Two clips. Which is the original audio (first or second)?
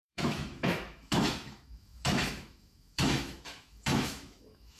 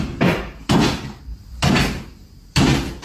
second